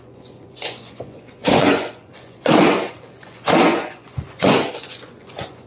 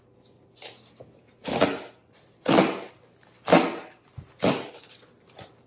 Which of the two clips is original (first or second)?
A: second